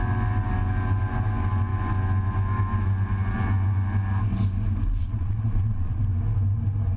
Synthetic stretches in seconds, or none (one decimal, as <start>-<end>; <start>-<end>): 5.0-6.0